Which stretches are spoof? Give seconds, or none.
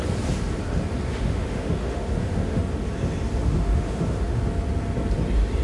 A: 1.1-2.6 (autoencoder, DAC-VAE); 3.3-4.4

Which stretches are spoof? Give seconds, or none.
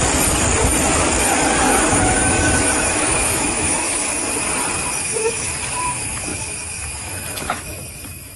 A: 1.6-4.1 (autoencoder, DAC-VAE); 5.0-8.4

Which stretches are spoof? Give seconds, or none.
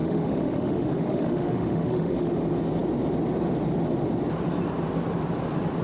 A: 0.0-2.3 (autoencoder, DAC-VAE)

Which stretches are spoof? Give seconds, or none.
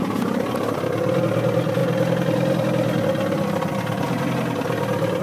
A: none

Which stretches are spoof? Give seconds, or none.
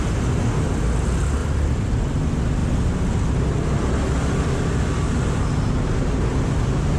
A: none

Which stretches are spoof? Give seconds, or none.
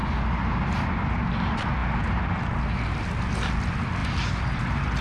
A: none